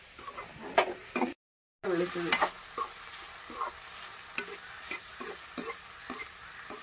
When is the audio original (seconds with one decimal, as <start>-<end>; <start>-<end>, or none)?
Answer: 0.0-6.8